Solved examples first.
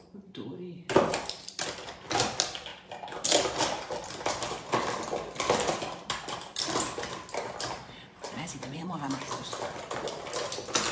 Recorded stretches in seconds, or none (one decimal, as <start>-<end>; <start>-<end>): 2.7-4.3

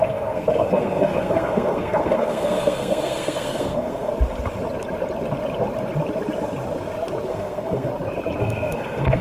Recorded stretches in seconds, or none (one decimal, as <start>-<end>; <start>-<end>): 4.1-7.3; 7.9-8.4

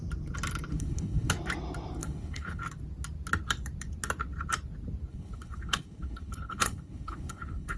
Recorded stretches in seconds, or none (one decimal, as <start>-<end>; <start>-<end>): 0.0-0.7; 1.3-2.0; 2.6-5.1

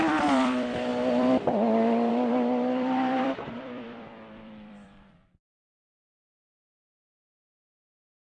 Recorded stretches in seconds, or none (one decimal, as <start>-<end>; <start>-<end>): none

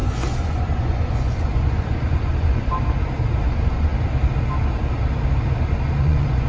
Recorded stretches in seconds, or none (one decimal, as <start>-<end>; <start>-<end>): 2.7-3.5; 3.9-6.0